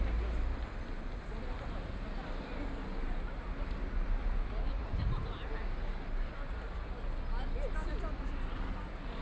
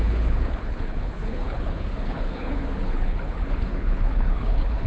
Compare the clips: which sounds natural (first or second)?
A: first